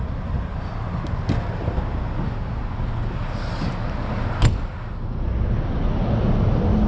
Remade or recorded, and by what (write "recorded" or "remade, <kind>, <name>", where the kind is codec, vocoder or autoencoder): recorded